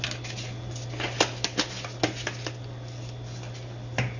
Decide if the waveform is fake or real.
real